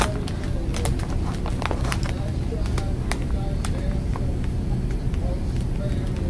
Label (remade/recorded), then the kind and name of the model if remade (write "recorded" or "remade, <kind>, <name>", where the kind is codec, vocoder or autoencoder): recorded